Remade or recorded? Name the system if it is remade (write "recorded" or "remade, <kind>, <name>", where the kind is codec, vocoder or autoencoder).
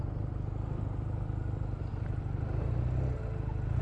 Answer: recorded